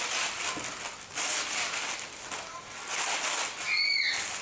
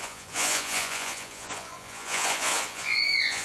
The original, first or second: first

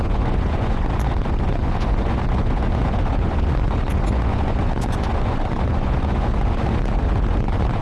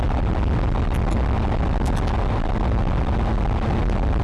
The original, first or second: second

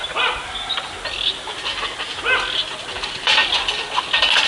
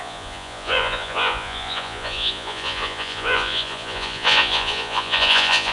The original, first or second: first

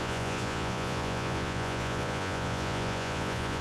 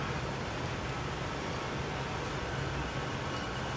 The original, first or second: second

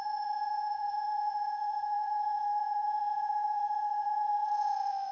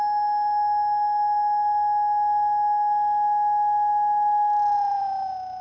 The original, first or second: second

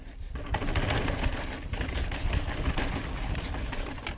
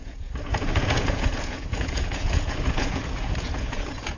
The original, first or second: first